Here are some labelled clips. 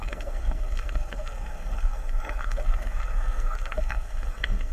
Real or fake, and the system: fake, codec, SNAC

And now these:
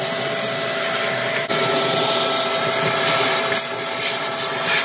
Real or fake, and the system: real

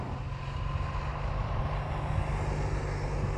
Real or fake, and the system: real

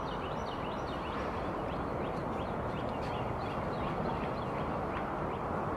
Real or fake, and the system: real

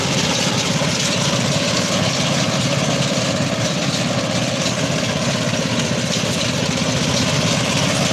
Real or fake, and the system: real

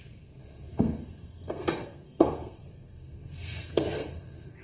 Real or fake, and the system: fake, codec, SNAC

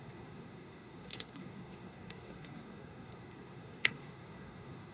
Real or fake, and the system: fake, codec, SNAC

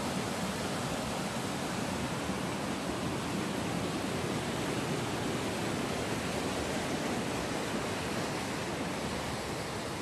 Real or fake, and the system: real